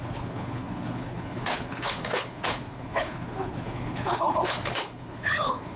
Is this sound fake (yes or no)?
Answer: yes